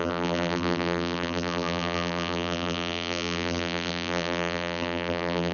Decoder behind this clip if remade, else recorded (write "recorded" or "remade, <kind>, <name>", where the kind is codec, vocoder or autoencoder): remade, vocoder, BigVGAN v2